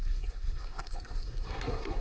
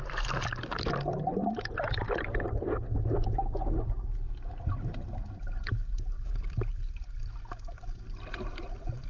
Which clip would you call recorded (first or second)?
second